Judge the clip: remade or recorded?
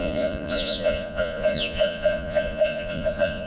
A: remade